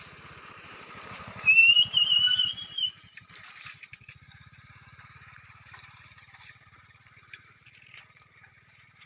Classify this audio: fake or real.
fake